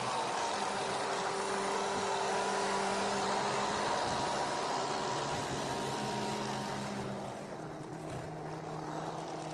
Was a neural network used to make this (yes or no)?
no